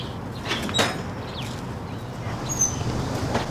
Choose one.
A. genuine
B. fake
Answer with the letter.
A